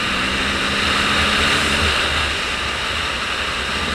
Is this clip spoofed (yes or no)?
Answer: no